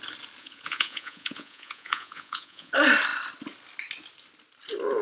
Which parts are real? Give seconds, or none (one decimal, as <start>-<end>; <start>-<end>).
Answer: 0.0-0.4; 2.7-5.0